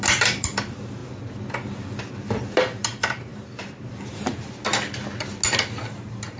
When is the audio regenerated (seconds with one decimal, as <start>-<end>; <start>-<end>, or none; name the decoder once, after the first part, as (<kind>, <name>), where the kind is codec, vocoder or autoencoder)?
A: 0.0-1.0 (vocoder, BigVGAN v2); 2.0-4.7; 5.9-6.4